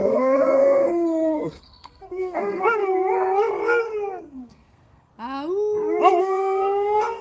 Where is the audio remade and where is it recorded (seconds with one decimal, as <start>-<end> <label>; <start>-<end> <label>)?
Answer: 0.0-2.8 remade; 2.8-4.2 recorded; 4.2-5.1 remade; 5.1-6.2 recorded; 6.2-7.2 remade